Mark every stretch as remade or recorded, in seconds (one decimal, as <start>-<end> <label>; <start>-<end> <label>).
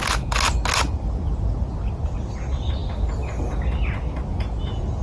0.0-4.3 recorded; 4.3-5.0 remade